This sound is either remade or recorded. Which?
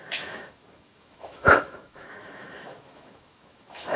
remade